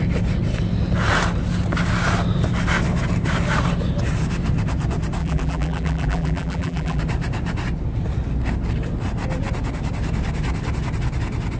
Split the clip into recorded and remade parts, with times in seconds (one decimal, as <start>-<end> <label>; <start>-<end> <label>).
0.0-5.2 recorded; 5.2-7.0 remade; 7.0-11.6 recorded